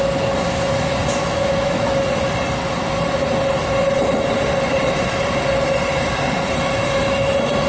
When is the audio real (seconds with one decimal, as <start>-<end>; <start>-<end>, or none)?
0.0-1.2; 2.1-7.7